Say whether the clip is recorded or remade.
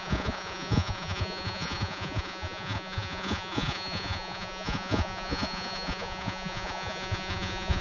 remade